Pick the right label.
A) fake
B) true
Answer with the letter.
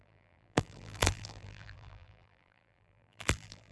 A